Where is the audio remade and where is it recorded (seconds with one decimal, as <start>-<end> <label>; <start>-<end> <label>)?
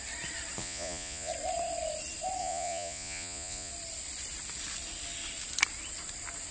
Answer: 0.0-0.6 recorded; 0.6-1.3 remade; 1.3-2.4 recorded; 2.4-3.7 remade; 3.7-6.5 recorded